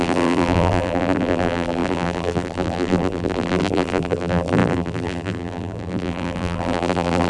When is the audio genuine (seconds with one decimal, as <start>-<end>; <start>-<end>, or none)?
none